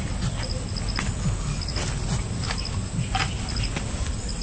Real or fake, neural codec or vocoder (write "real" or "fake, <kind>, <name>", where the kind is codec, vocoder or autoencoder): real